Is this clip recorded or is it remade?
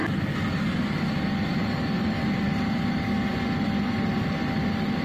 recorded